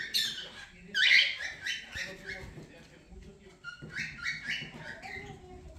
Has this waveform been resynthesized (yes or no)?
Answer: no